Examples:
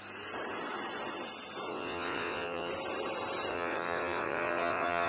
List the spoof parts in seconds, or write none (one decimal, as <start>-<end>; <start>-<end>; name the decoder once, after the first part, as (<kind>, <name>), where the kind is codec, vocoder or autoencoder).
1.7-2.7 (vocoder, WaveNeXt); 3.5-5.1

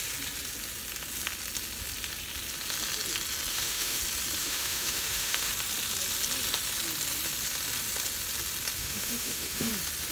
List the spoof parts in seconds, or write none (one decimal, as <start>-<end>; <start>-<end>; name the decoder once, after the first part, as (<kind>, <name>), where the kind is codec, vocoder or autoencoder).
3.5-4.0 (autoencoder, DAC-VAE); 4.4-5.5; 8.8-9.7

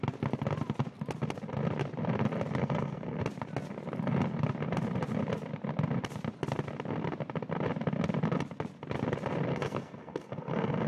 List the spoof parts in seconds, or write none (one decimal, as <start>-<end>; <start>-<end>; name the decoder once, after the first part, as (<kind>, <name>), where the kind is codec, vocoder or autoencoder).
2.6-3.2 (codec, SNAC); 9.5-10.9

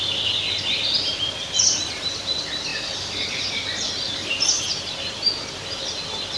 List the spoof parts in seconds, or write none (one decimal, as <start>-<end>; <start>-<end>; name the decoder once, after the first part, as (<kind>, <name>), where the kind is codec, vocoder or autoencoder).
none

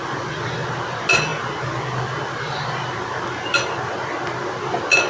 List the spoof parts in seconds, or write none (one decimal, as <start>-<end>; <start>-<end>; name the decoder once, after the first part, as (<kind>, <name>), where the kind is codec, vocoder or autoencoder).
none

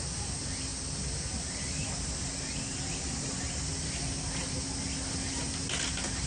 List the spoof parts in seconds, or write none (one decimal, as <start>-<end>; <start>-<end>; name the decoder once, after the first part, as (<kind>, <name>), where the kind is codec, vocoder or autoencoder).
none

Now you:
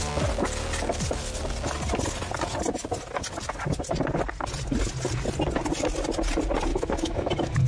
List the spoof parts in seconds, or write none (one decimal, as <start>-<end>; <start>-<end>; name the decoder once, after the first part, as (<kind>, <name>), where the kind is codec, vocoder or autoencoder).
6.7-7.3 (autoencoder, DAC-VAE)